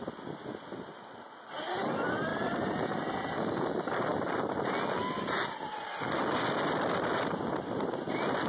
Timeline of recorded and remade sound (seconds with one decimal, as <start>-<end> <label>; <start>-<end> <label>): 0.0-8.5 recorded